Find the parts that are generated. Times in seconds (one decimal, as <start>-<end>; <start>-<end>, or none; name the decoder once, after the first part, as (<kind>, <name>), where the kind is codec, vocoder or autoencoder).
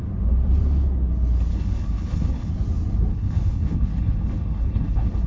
1.5-2.5 (codec, HILCodec); 3.1-5.3